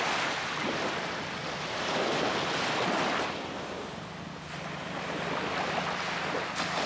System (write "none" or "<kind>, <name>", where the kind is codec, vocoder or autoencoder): none